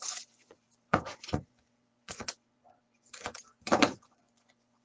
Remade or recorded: remade